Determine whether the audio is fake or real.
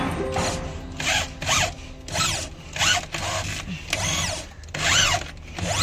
real